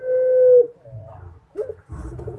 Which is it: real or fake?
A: real